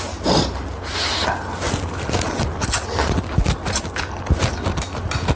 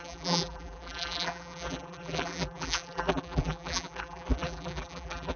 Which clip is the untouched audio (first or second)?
first